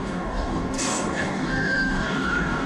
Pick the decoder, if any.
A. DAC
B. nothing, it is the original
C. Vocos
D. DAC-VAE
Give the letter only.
A